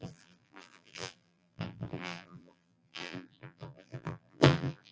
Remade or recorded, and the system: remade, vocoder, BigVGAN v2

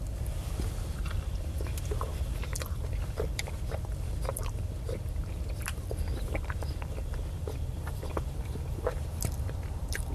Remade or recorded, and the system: remade, vocoder, BigVGAN v2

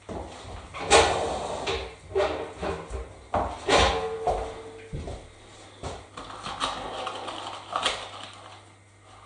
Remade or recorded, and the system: recorded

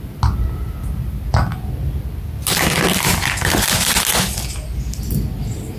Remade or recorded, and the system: recorded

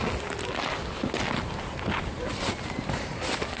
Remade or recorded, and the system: recorded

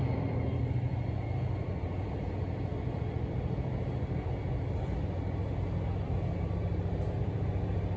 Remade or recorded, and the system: remade, vocoder, BigVGAN v2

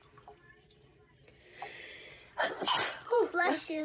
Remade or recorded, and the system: remade, vocoder, BigVGAN v2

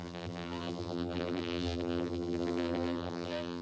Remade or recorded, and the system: remade, vocoder, BigVGAN v2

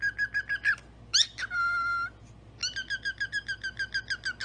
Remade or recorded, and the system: recorded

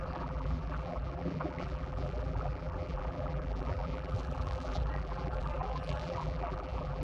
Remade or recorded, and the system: remade, vocoder, BigVGAN v2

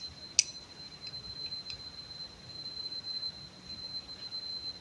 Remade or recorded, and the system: recorded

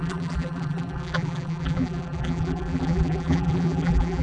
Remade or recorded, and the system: remade, vocoder, BigVGAN v2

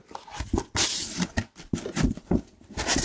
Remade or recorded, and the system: remade, vocoder, BigVGAN v2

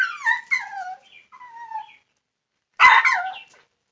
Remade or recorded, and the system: recorded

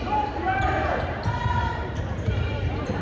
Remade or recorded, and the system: remade, vocoder, BigVGAN v2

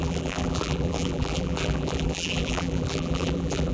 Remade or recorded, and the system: remade, vocoder, BigVGAN v2